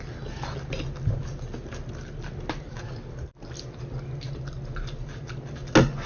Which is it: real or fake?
real